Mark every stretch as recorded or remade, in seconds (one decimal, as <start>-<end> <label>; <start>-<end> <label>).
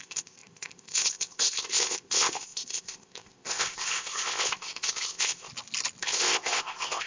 0.0-5.5 remade; 5.5-6.0 recorded; 6.0-7.1 remade